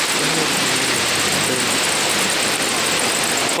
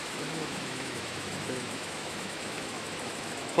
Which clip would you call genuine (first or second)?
first